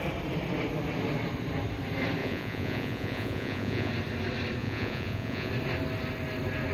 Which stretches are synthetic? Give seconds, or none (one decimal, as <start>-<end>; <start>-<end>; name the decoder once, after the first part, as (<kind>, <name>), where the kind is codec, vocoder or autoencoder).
2.2-3.9 (vocoder, Vocos); 4.6-5.5